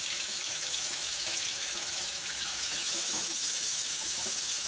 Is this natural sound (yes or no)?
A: no